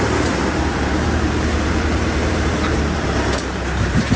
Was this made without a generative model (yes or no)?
no